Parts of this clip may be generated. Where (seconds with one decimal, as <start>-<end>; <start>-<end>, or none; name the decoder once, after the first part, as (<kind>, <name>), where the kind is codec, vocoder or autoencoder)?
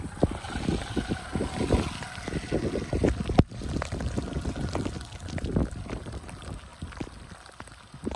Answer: 6.7-8.2 (vocoder, BigVGAN v2)